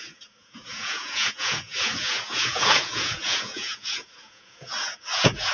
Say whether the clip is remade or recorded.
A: remade